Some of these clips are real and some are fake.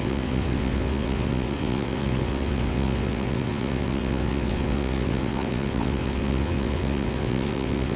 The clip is fake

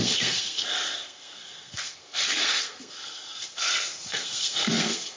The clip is fake